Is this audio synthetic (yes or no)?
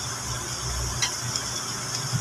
no